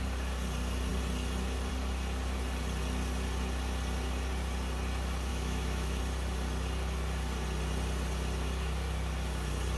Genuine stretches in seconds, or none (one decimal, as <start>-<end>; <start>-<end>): 0.0-5.3; 6.0-9.8